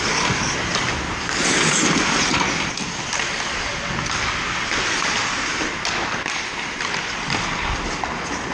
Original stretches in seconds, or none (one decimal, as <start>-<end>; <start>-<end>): 0.0-8.5